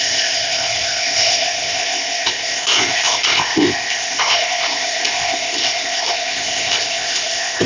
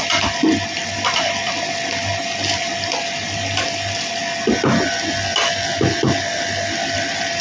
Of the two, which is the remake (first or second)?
first